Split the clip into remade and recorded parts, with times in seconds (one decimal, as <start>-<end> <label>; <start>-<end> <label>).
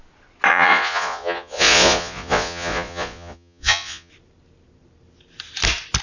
0.0-0.5 recorded; 0.5-4.1 remade; 4.1-6.0 recorded